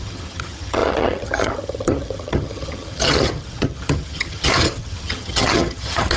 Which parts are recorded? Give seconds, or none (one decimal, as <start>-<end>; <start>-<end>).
none